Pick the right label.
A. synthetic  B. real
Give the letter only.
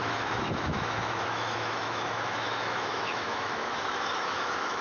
A